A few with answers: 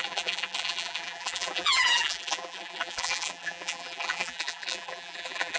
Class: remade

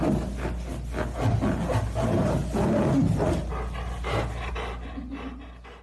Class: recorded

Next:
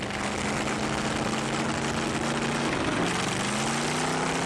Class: recorded